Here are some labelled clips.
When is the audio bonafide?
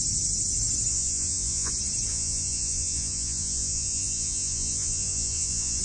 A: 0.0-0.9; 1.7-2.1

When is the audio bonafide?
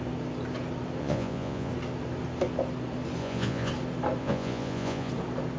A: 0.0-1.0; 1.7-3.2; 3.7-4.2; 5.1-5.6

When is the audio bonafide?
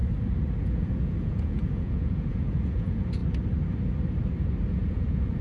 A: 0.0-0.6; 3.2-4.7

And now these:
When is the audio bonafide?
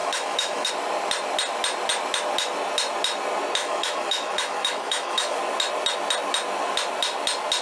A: 0.7-3.6; 5.4-7.6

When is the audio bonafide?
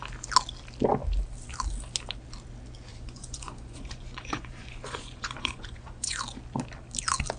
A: 0.0-2.9; 6.2-7.4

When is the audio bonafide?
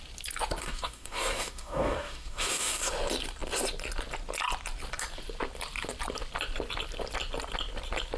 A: 0.0-0.6; 2.9-8.2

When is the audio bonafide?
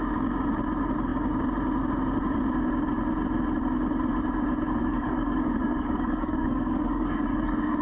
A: 0.0-4.8